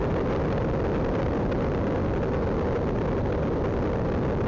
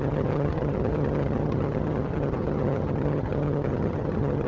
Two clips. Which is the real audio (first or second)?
first